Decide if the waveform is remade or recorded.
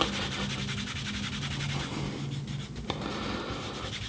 recorded